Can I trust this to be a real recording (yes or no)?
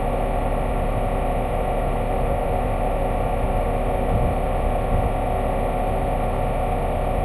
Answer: yes